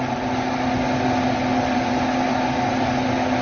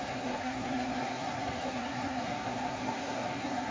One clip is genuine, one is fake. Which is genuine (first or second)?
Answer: first